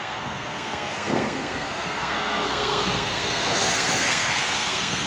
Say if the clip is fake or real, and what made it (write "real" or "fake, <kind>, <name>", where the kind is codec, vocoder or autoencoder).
fake, codec, SNAC